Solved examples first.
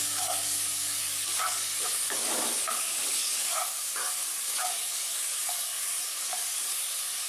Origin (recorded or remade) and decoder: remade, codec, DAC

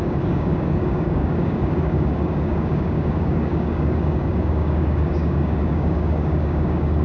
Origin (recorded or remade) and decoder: remade, codec, DAC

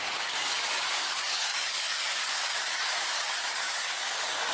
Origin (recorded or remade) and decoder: remade, codec, DAC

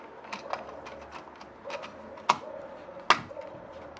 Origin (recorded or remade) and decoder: recorded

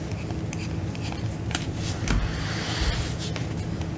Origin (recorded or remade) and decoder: recorded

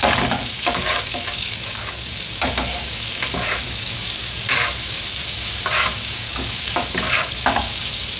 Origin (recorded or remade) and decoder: remade, codec, DAC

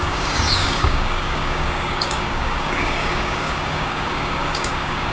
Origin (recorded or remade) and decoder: remade, codec, DAC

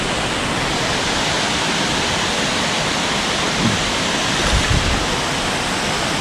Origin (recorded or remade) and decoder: recorded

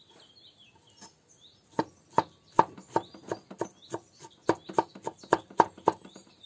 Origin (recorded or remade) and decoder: recorded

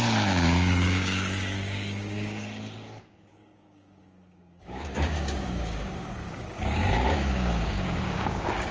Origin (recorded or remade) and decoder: remade, codec, DAC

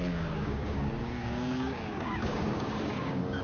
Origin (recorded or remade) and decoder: remade, codec, DAC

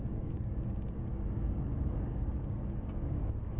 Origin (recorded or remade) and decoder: remade, codec, DAC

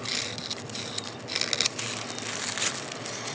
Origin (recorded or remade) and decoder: recorded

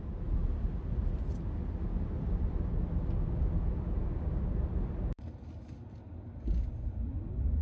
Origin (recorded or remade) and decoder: recorded